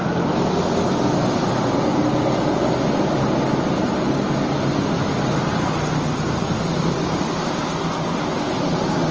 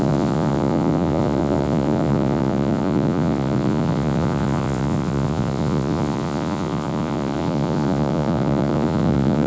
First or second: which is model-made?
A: second